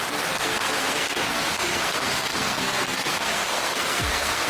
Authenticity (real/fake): fake